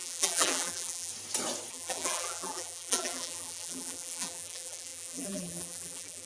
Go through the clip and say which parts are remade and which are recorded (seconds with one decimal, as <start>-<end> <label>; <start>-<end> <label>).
0.0-1.1 remade; 1.1-1.7 recorded; 1.7-6.3 remade